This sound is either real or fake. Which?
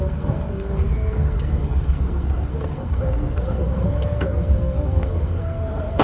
fake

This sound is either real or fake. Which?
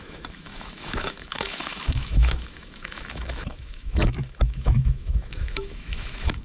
fake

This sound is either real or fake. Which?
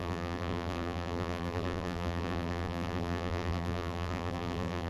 fake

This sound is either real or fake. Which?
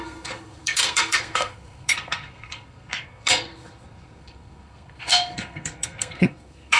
fake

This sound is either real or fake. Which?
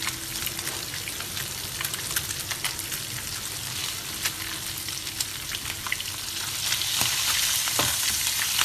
real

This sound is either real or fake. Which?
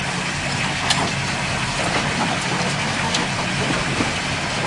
real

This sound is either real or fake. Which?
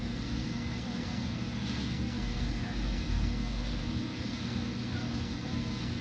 fake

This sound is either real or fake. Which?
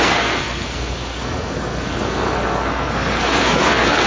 fake